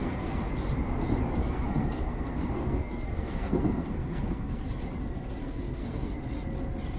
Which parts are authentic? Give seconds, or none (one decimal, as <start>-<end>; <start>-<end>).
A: 0.5-1.4; 4.8-5.4; 6.2-7.0